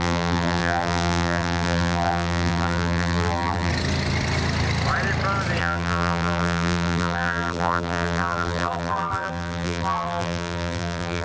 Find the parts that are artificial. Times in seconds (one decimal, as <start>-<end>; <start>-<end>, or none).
0.0-3.7; 5.6-11.2